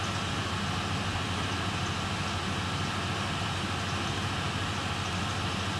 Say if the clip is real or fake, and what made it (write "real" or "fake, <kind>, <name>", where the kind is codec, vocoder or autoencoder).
real